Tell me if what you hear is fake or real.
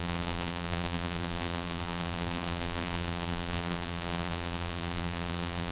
fake